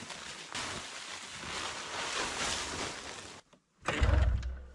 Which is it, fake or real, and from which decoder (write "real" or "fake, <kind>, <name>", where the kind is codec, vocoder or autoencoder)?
real